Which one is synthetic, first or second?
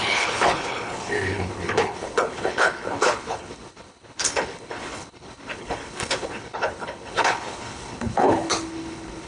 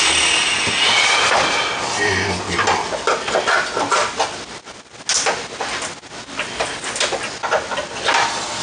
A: first